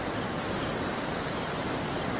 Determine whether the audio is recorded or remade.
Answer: recorded